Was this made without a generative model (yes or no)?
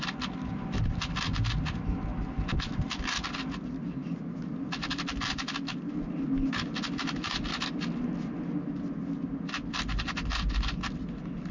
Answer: yes